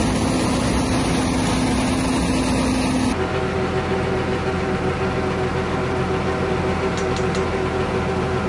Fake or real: real